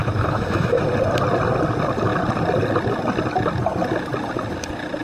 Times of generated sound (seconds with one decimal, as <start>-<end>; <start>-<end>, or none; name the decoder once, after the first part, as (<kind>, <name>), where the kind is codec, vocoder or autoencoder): 0.0-0.8 (autoencoder, DAC-VAE)